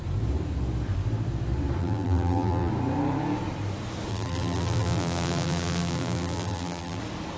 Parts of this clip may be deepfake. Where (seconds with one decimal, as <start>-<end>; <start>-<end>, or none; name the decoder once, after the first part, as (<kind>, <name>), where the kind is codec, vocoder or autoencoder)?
1.8-2.7 (vocoder, BigVGAN v2); 4.1-7.0